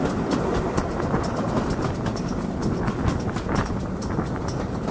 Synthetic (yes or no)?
no